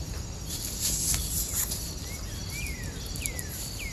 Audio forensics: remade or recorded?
recorded